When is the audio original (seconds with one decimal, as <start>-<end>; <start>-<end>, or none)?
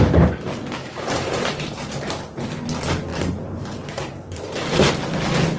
0.0-0.8; 2.2-3.1; 4.9-5.6